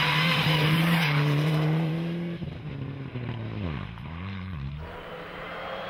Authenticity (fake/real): fake